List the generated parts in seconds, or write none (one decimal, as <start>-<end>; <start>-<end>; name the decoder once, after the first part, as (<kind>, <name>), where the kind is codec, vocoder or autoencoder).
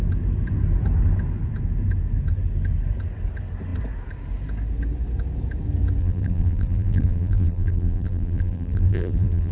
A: 6.0-9.5 (vocoder, BigVGAN v2)